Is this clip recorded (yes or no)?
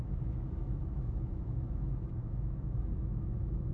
no